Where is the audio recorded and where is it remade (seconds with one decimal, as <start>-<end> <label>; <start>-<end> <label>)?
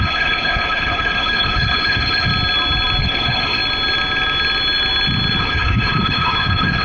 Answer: 0.0-2.3 remade; 2.3-3.0 recorded; 3.0-3.6 remade; 3.6-5.4 recorded; 5.4-6.8 remade